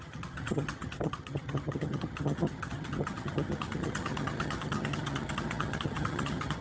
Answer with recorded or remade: remade